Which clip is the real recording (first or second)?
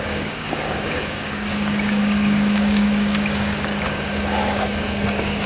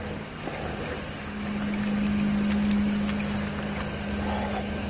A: second